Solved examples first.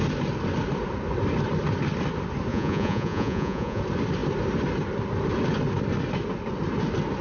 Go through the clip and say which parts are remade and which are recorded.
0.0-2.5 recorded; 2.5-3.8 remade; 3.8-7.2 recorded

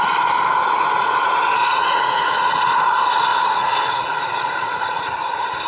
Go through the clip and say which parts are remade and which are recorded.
0.0-1.6 recorded; 1.6-2.8 remade; 2.8-3.3 recorded; 3.3-5.0 remade; 5.0-5.7 recorded

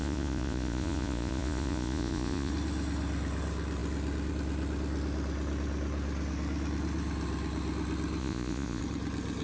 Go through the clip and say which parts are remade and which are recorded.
0.0-2.5 remade; 2.5-8.2 recorded; 8.2-8.8 remade; 8.8-9.4 recorded

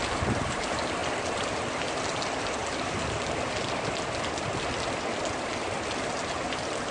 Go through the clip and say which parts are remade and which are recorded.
0.0-6.9 recorded

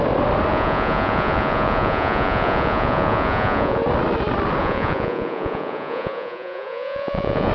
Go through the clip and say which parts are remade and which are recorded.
0.0-0.5 recorded; 0.5-3.8 remade; 3.8-4.6 recorded; 4.6-7.5 remade

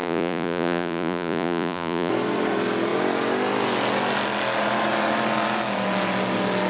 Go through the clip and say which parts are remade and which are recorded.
0.0-2.1 remade; 2.1-6.7 recorded

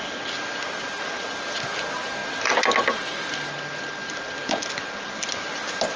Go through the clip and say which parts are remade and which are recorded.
0.0-6.0 recorded

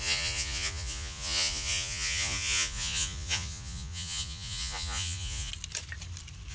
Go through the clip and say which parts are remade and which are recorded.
0.0-5.5 remade; 5.5-6.5 recorded